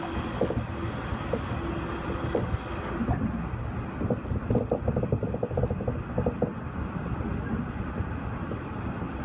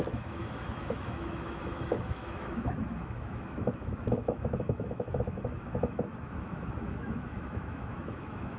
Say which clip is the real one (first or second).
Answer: first